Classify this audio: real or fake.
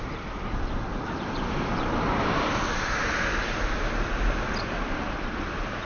real